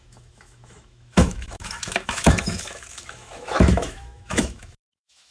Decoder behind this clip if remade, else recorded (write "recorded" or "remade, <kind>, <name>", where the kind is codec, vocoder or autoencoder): remade, autoencoder, DAC-VAE